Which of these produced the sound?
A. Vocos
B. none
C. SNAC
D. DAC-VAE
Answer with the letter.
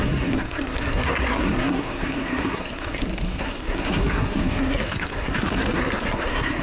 C